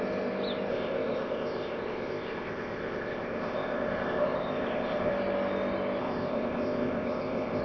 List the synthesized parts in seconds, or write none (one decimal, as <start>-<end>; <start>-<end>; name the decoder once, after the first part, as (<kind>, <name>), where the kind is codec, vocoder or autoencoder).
0.7-5.1 (codec, ZipCodec); 6.0-7.6